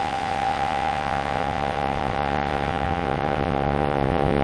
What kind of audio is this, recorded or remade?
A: remade